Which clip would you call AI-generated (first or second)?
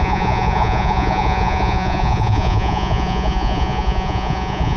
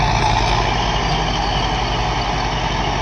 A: first